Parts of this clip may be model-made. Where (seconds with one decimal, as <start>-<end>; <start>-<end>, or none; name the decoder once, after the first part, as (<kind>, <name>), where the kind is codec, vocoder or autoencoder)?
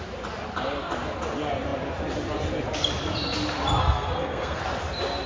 3.8-4.6 (codec, SNAC)